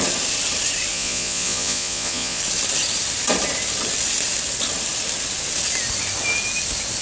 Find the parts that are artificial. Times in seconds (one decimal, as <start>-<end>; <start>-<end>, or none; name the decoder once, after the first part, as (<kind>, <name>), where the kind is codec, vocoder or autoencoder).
0.9-2.4 (vocoder, Vocos)